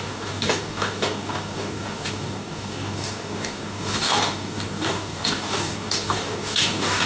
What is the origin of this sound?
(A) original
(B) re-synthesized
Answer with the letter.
B